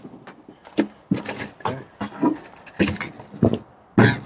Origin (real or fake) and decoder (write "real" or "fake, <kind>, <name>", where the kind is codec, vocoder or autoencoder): real